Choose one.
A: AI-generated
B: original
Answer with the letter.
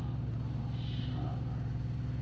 B